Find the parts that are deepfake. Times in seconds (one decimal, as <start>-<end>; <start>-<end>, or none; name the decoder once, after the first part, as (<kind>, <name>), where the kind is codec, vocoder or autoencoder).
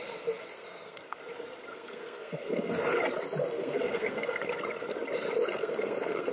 0.5-1.2 (codec, SNAC); 1.7-2.8; 3.4-4.4; 5.4-6.3